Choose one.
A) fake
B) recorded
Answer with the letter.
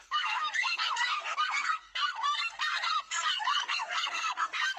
A